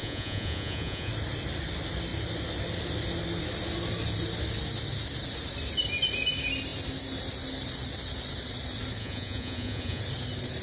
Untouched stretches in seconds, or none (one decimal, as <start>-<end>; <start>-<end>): 1.1-9.0; 10.0-10.6